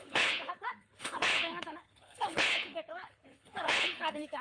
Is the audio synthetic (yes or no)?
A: yes